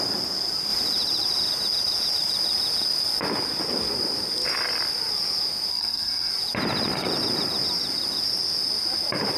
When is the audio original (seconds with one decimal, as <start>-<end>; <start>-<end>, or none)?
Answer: 0.0-5.7; 6.3-9.4